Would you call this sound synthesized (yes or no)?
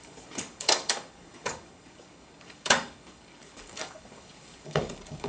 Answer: yes